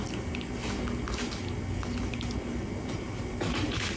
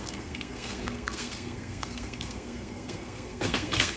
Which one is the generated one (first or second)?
second